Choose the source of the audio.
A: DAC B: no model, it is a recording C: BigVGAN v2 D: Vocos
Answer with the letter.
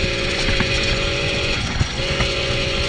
D